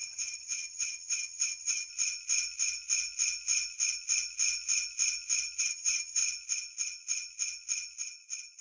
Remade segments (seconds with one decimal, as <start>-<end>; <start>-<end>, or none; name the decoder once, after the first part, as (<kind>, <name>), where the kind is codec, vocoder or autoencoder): 0.0-1.9 (vocoder, HiFi-GAN); 5.6-6.2